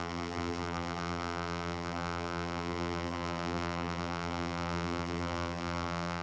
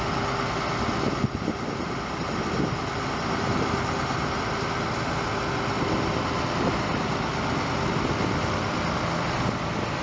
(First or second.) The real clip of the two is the second